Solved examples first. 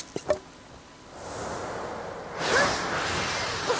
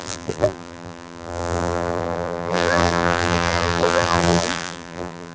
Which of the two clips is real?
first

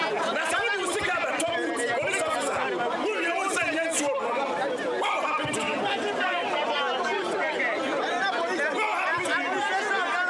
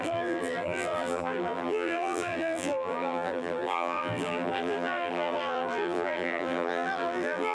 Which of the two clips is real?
first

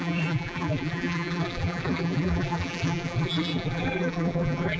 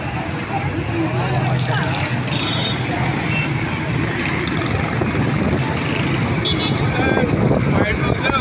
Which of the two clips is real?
second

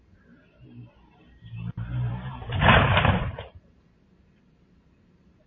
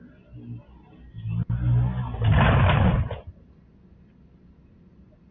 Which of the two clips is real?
second